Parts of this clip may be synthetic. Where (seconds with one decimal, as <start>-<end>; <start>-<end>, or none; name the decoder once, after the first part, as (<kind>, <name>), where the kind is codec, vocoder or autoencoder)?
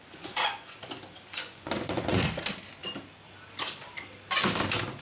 0.0-0.8 (vocoder, Vocos); 1.3-2.3